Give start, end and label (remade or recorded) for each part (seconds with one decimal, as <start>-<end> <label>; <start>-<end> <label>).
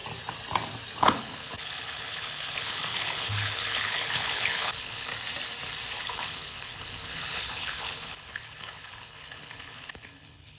0.0-1.0 recorded; 1.0-5.1 remade; 5.1-6.0 recorded; 6.0-10.6 remade